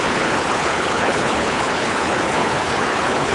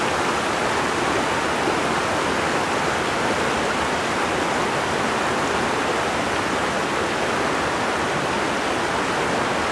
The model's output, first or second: first